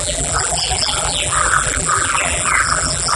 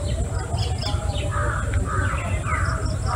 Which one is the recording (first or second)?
second